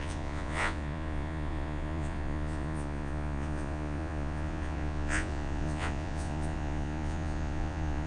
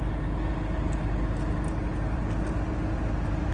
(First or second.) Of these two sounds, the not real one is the first